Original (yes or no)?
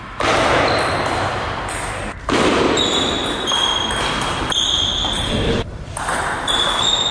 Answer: no